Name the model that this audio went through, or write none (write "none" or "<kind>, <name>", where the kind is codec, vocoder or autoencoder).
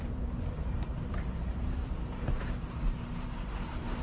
vocoder, BigVGAN v2